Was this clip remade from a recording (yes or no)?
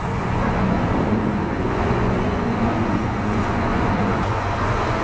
yes